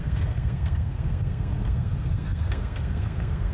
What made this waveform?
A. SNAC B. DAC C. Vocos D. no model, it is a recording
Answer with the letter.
A